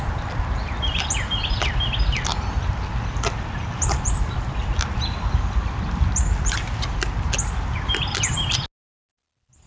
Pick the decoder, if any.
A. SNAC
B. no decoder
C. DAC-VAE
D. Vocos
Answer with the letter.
B